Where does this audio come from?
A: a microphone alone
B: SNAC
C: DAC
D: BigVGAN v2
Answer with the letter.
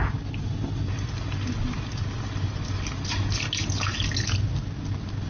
A